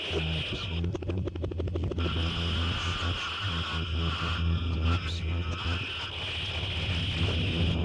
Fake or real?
real